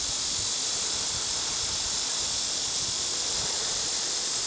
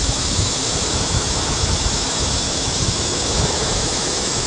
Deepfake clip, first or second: second